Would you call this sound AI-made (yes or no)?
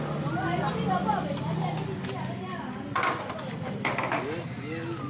no